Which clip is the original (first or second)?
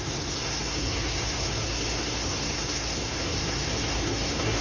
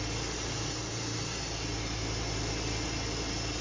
second